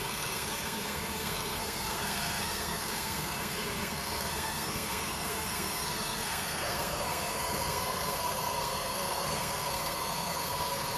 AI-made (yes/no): yes